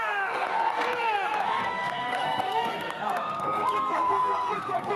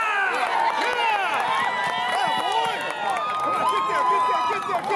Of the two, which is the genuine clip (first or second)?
second